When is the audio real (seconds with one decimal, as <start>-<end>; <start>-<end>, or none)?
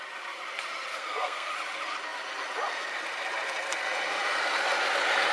0.0-0.9; 1.5-5.3